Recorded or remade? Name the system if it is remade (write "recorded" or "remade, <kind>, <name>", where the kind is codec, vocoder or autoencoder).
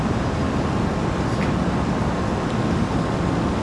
recorded